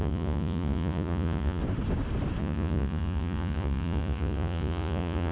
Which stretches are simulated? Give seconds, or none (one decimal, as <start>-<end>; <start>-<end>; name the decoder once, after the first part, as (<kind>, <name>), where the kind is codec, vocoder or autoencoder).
0.0-1.6 (vocoder, Vocos); 2.4-5.3